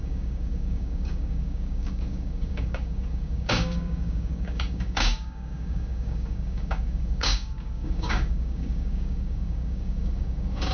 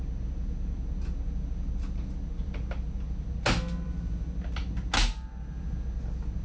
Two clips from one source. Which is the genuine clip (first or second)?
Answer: second